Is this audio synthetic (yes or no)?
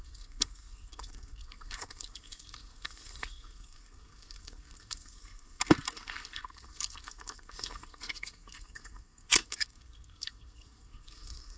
yes